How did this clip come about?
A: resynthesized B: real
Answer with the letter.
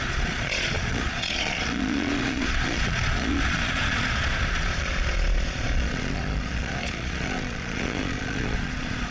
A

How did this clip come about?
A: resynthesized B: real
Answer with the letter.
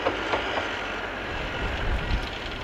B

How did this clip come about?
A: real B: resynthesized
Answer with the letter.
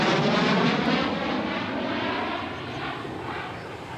A